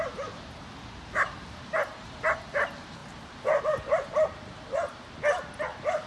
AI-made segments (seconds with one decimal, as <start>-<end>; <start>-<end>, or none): 3.0-3.6